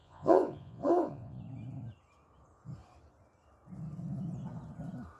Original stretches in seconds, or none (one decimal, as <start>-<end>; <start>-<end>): 1.4-5.2